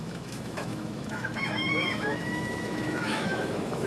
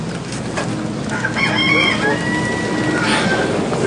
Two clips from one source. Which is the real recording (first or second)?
second